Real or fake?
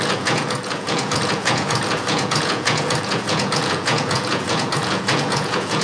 fake